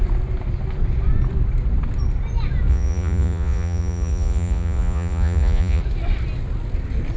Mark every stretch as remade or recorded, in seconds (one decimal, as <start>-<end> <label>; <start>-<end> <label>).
0.0-2.7 recorded; 2.7-5.8 remade; 5.8-7.2 recorded